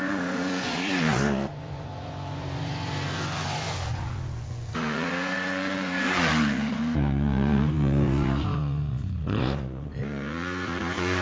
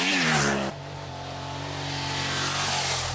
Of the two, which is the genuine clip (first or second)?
second